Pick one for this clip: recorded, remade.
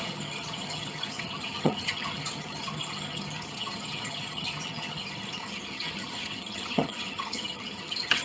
remade